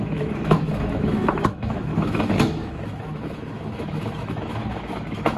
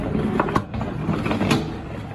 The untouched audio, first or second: second